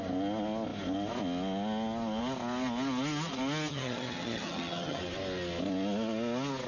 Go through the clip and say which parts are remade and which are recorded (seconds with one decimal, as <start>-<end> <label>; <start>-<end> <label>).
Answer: 0.0-3.7 recorded; 3.7-5.0 remade; 5.0-6.7 recorded